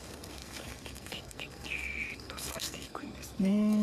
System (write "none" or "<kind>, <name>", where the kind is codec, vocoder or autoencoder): codec, SNAC